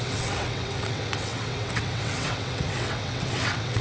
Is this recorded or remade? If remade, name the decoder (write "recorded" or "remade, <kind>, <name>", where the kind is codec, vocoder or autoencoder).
remade, vocoder, WaveNeXt